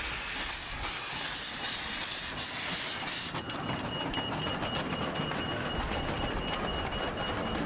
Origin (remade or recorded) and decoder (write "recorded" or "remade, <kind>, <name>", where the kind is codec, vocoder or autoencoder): recorded